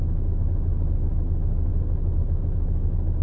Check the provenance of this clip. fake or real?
real